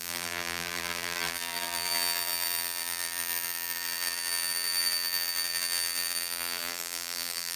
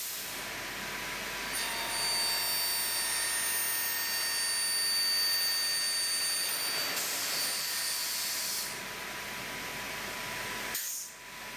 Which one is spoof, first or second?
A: first